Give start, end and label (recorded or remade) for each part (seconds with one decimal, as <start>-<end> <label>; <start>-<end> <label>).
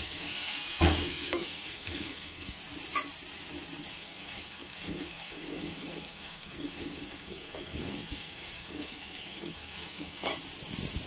0.0-2.6 remade; 2.6-3.9 recorded; 3.9-10.3 remade; 10.3-11.1 recorded